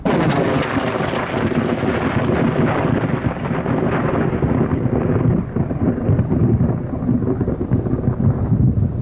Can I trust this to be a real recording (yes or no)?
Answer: yes